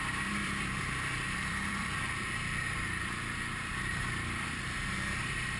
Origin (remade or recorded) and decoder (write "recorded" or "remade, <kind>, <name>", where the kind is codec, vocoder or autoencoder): remade, vocoder, BigVGAN v2